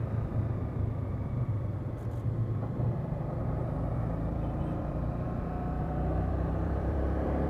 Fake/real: fake